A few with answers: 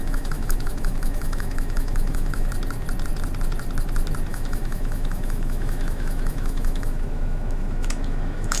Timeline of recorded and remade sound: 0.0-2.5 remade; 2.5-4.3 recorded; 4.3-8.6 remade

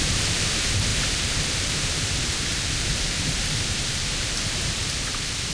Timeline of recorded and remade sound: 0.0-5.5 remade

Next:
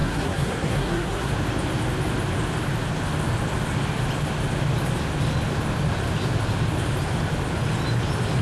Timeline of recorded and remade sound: 0.0-1.3 remade; 1.3-8.4 recorded